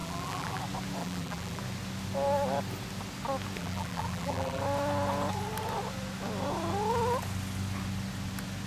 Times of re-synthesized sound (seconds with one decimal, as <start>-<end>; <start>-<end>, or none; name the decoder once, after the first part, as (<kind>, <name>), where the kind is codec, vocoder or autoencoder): 0.0-0.6 (vocoder, BigVGAN v2); 1.0-1.6; 3.6-4.6